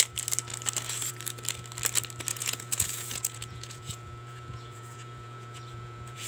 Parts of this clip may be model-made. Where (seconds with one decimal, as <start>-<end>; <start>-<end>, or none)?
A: 2.3-6.3